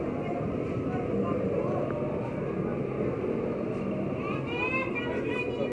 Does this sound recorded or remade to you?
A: recorded